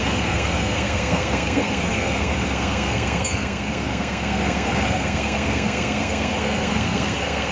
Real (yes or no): no